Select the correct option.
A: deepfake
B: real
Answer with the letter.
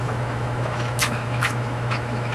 A